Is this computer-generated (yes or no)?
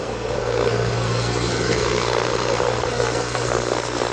yes